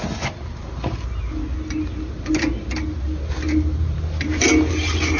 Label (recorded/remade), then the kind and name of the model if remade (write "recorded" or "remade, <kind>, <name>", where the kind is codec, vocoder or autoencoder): recorded